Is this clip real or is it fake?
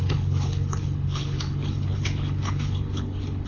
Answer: fake